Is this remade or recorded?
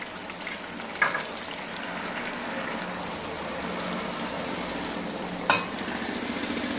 recorded